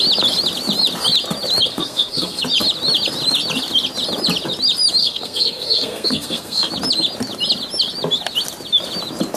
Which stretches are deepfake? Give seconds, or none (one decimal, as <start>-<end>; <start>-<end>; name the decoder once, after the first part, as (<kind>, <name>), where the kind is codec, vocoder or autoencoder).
1.7-2.4 (codec, SNAC); 5.0-6.7